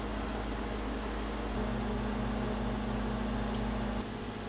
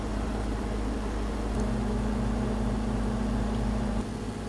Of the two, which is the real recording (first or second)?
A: first